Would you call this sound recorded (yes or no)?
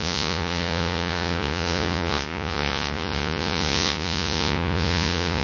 no